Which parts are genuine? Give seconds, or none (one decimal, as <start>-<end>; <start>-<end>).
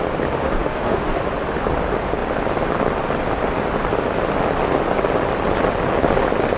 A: 0.0-0.4; 1.2-6.6